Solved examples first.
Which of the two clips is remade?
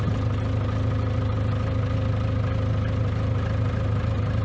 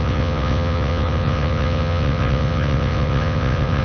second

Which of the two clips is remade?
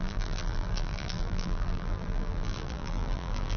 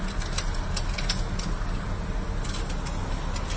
first